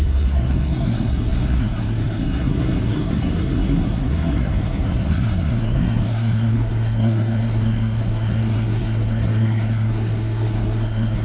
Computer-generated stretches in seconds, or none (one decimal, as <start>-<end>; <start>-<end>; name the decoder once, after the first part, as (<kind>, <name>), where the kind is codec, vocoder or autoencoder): 0.0-11.2 (codec, SNAC)